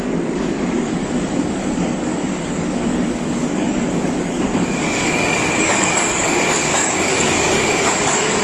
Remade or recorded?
remade